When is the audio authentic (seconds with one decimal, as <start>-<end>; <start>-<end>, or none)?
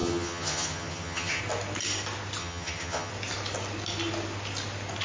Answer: 1.4-2.4; 3.1-5.0